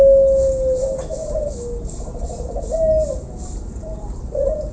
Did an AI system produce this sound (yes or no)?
no